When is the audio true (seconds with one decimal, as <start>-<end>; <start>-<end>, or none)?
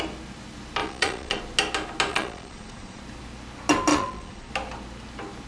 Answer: 0.0-0.8; 1.4-2.1; 3.0-3.9; 4.5-5.5